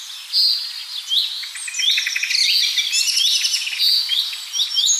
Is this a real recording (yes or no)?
yes